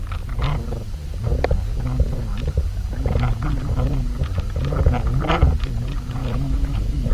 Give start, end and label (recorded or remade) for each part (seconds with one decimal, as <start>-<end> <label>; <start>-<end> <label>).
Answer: 0.0-6.2 recorded; 6.2-7.1 remade